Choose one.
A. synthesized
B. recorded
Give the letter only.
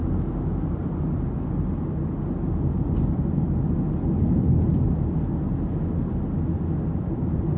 B